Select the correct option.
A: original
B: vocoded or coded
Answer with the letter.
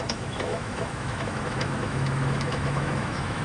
B